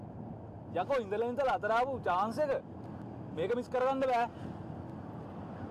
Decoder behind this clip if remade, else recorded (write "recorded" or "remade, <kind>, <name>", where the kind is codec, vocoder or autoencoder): recorded